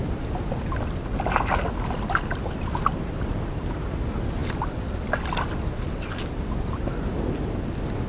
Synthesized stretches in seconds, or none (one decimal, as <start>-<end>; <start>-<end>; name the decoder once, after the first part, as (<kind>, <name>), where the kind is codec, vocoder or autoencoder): none